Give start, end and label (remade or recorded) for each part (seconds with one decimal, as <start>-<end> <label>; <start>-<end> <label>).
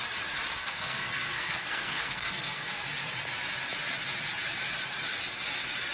0.0-0.6 recorded; 0.6-2.8 remade; 2.8-5.9 recorded